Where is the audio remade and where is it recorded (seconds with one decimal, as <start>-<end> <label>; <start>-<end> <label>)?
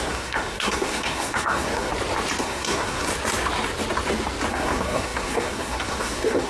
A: 0.0-1.9 remade; 1.9-2.4 recorded; 2.4-3.1 remade; 3.1-4.5 recorded; 4.5-6.5 remade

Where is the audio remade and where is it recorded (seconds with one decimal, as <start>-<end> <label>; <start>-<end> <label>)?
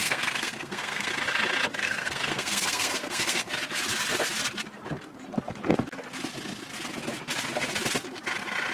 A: 0.0-1.1 remade; 1.1-1.8 recorded; 1.8-3.5 remade; 3.5-8.7 recorded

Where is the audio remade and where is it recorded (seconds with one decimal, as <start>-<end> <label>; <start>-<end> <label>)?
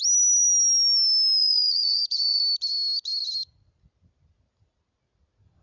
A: 0.0-1.4 recorded; 1.4-2.4 remade; 2.4-5.6 recorded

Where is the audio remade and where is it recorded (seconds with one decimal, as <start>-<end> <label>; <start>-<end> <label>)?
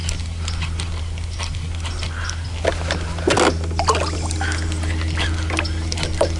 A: 0.0-6.4 recorded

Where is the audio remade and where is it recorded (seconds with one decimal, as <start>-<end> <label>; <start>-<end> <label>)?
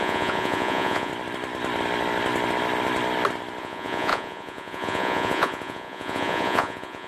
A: 0.0-1.1 remade; 1.1-3.6 recorded; 3.6-7.1 remade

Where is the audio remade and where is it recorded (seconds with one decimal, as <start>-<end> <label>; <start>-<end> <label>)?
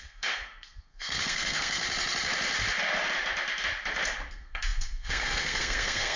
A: 0.0-1.8 remade; 1.8-4.3 recorded; 4.3-6.2 remade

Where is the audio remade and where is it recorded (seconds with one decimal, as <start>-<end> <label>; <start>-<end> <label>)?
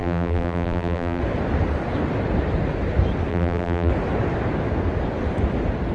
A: 0.0-1.2 remade; 1.2-3.3 recorded; 3.3-3.9 remade; 3.9-5.9 recorded